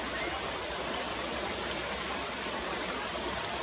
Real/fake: real